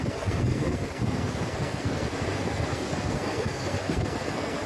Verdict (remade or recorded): remade